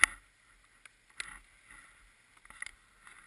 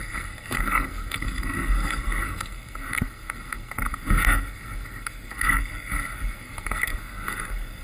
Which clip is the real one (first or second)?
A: first